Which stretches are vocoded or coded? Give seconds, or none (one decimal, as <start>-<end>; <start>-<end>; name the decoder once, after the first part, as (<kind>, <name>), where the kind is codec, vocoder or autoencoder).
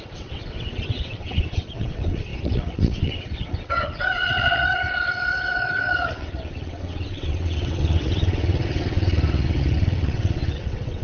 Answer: 0.0-11.0 (vocoder, WaveNeXt)